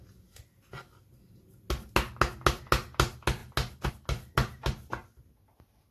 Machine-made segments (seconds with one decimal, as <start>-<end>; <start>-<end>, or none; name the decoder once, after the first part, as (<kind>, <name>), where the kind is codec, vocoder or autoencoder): none